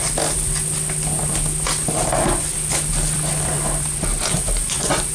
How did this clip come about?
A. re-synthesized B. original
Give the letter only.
B